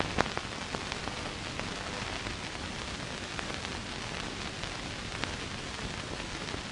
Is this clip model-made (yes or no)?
yes